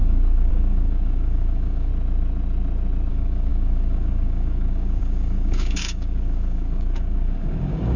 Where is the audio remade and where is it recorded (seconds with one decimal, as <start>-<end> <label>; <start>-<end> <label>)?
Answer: 0.0-1.9 remade; 1.9-3.1 recorded; 3.1-8.0 remade